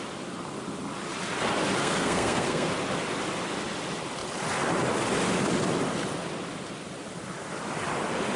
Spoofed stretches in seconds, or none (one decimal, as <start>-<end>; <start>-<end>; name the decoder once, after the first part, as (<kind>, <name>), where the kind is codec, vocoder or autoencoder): 1.8-2.7 (codec, SNAC)